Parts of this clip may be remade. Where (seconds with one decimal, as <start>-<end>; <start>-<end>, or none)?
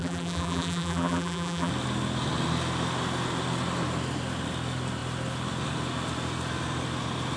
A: 0.0-1.7